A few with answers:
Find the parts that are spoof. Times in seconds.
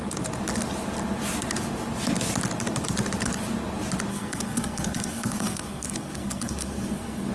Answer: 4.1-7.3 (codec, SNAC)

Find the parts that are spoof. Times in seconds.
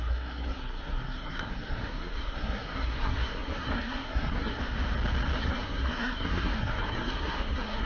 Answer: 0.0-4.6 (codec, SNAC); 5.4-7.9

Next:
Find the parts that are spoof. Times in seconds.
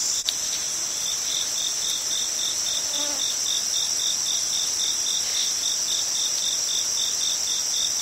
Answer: 1.1-3.0 (vocoder, BigVGAN v2); 5.4-7.2